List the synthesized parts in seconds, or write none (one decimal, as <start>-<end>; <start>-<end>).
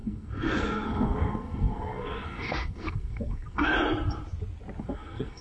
0.0-3.7; 4.8-5.4